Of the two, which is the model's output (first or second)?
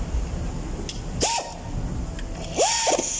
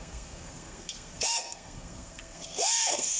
second